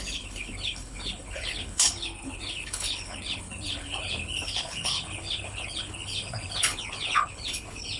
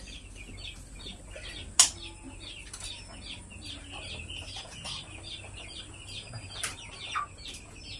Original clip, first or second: second